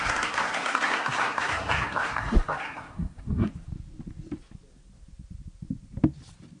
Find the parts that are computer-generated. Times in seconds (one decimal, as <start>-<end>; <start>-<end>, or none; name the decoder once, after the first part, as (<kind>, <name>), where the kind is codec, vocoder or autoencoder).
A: 0.0-3.5 (codec, SNAC)